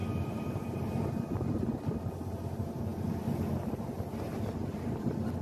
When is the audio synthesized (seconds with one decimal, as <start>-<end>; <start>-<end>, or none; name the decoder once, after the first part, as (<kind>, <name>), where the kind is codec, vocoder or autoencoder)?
0.0-1.1 (vocoder, BigVGAN v2)